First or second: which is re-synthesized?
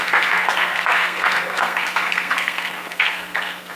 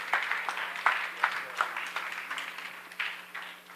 first